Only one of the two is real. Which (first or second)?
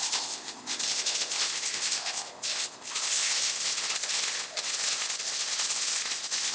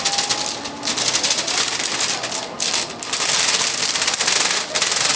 second